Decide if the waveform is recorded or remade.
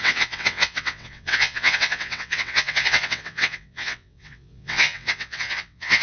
remade